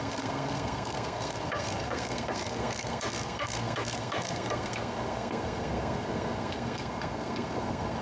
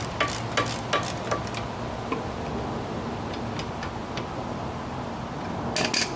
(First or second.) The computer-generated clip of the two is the first